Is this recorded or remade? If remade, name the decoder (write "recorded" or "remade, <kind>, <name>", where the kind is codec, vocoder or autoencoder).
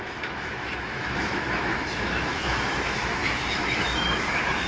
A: remade, autoencoder, DAC-VAE